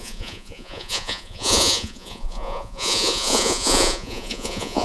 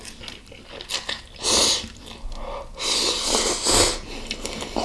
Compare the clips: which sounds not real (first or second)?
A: first